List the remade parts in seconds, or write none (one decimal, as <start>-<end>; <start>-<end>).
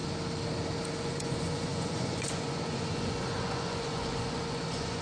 1.0-5.0